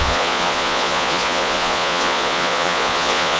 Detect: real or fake fake